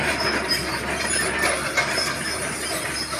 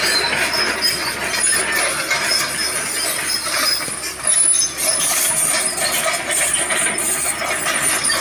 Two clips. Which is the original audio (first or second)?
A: second